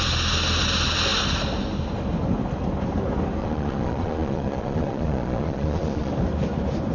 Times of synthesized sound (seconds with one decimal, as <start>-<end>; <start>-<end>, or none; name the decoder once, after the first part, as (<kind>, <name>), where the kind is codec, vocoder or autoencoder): 3.4-6.1 (vocoder, Vocos)